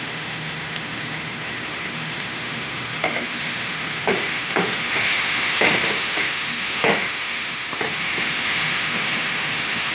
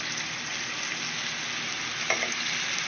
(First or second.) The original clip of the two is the second